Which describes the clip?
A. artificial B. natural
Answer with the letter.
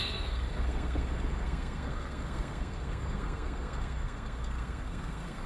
A